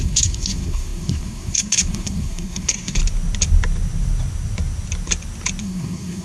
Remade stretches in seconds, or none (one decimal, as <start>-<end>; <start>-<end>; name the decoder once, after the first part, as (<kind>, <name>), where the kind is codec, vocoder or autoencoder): 0.0-3.0 (codec, SNAC); 5.6-6.2